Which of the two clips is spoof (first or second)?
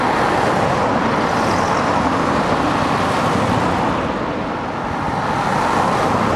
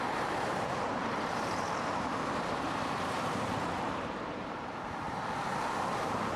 second